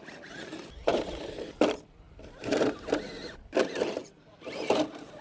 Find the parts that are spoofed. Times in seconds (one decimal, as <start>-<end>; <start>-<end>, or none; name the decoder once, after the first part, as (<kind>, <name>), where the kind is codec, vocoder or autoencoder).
0.9-3.6 (vocoder, BigVGAN v2); 4.0-5.2

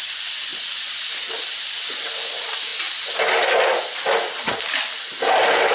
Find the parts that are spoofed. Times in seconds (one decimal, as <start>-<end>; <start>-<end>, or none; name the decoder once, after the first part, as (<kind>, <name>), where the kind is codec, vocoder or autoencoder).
none

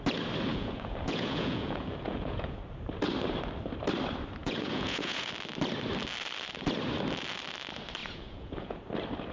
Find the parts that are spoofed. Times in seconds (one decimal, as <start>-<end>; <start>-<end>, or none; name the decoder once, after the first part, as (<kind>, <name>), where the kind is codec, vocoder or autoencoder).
0.5-2.6 (vocoder, Vocos); 4.4-5.3; 8.0-8.8

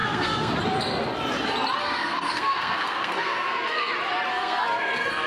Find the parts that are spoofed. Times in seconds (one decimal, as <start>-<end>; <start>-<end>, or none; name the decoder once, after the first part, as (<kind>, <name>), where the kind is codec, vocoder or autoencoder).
0.0-0.5 (codec, SNAC); 1.8-3.9; 4.3-5.3